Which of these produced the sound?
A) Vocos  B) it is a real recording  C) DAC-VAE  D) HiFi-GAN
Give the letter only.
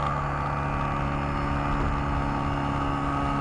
B